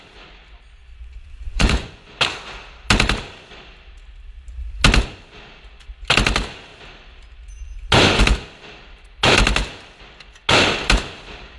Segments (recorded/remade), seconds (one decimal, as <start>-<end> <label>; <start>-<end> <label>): 0.0-0.8 recorded; 0.8-2.1 remade; 2.1-11.6 recorded